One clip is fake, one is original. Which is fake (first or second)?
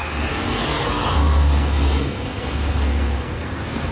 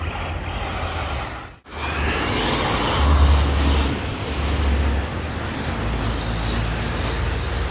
first